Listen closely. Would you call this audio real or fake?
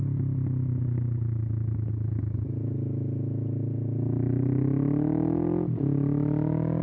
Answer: real